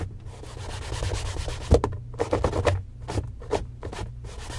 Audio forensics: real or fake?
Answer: real